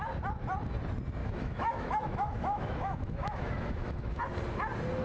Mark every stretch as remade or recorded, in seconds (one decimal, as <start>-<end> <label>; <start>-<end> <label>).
0.0-1.2 recorded; 1.2-4.2 remade; 4.2-5.0 recorded